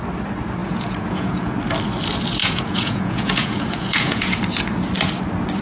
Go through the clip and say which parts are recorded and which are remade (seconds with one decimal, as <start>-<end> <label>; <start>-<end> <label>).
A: 0.0-0.6 recorded; 0.6-1.5 remade; 1.5-2.4 recorded; 2.4-4.4 remade; 4.4-5.6 recorded

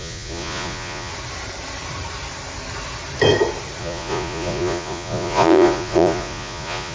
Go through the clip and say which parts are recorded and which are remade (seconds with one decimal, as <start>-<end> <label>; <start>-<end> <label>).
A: 0.0-1.1 remade; 1.1-3.8 recorded; 3.8-6.9 remade